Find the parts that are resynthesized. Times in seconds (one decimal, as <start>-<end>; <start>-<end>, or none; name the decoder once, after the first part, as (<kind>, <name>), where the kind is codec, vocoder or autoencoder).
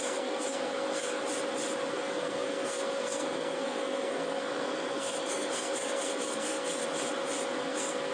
0.0-1.2 (codec, SNAC); 1.9-6.8; 7.6-8.1